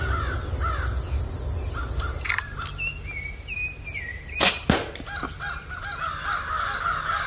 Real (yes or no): yes